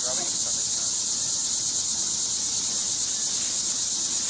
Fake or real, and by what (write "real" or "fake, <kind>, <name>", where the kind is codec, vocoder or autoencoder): real